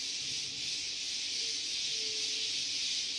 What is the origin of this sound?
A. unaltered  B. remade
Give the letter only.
A